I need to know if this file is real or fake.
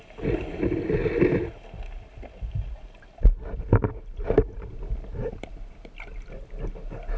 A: real